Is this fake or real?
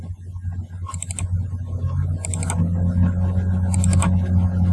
real